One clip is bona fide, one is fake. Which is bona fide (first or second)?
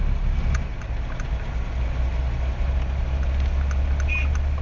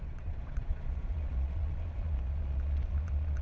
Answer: first